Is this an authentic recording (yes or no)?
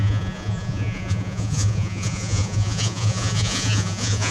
no